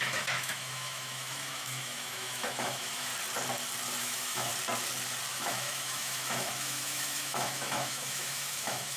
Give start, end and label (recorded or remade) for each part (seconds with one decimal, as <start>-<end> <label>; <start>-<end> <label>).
0.0-3.1 remade; 3.1-4.0 recorded; 4.0-4.5 remade; 4.5-5.3 recorded; 5.3-9.0 remade